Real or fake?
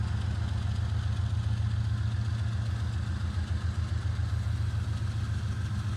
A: real